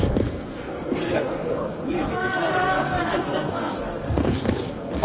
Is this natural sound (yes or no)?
no